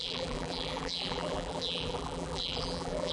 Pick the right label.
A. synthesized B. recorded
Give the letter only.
A